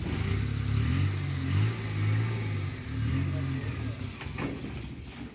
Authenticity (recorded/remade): recorded